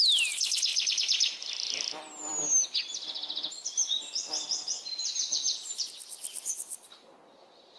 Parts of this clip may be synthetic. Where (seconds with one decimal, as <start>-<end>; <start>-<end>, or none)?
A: none